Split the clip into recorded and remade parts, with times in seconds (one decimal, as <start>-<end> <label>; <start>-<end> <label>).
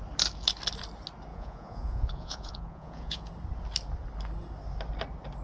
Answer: 0.0-1.3 recorded; 1.3-3.3 remade; 3.3-5.4 recorded